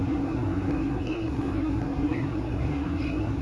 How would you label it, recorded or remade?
remade